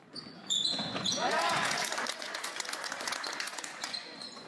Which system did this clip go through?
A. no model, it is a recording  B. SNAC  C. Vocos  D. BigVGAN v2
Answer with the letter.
C